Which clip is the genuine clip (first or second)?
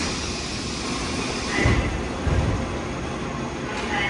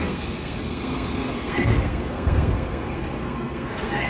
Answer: first